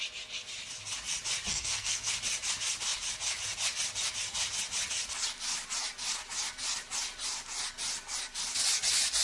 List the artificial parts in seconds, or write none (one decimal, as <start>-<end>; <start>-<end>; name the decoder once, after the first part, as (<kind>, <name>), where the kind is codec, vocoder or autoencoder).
1.5-2.0 (codec, SNAC)